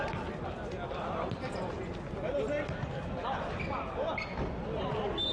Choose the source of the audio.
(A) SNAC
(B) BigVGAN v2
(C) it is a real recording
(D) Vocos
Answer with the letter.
C